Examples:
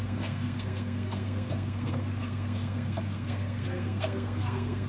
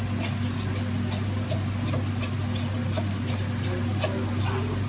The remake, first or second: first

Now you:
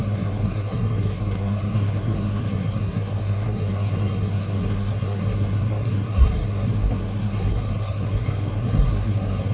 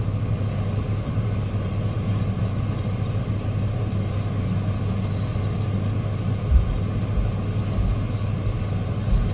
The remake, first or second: first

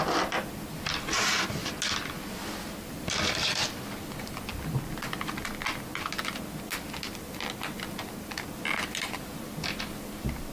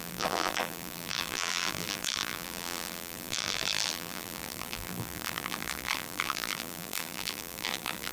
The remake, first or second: second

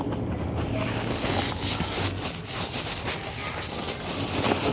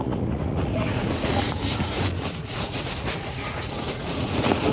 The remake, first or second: second